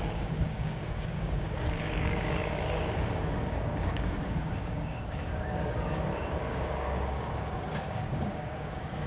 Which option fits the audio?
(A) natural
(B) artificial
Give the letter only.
B